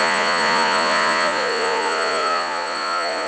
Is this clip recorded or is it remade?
remade